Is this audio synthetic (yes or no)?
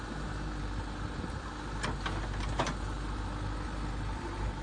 no